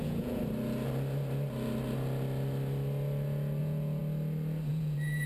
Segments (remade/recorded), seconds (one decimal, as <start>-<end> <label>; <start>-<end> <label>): 0.0-0.4 remade; 0.4-3.6 recorded; 3.6-4.0 remade; 4.0-4.7 recorded; 4.7-5.3 remade